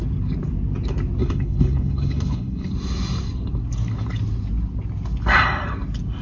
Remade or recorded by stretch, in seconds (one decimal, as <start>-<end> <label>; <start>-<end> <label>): 0.0-1.2 recorded; 1.2-2.7 remade; 2.7-6.2 recorded